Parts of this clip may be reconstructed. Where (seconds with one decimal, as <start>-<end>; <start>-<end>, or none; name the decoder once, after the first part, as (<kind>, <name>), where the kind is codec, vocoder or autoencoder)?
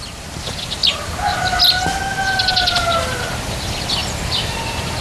none